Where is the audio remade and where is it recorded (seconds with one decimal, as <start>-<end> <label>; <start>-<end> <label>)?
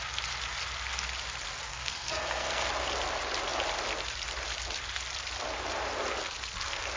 0.0-1.7 recorded; 1.7-2.7 remade; 2.7-7.0 recorded